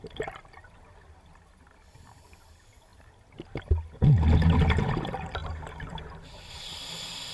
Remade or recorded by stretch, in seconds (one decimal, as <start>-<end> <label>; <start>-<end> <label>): 0.0-7.3 recorded